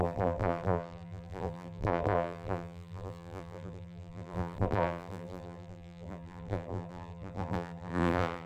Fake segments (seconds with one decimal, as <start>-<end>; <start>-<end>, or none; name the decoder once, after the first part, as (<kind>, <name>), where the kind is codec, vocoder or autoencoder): 0.0-8.5 (vocoder, BigVGAN v2)